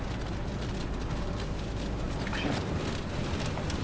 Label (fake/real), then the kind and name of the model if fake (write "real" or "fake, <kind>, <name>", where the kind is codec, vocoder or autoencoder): real